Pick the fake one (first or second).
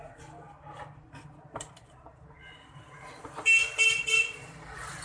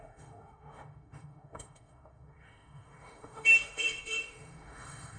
second